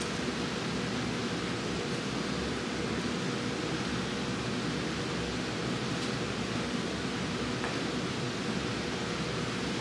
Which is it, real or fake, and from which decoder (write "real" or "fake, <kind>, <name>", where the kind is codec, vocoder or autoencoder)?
real